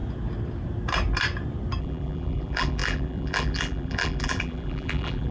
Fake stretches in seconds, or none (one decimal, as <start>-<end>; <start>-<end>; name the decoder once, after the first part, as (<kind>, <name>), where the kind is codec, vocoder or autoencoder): 1.8-5.3 (vocoder, BigVGAN v2)